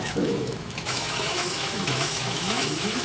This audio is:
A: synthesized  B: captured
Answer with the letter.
A